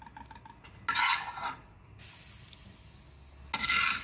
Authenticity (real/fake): real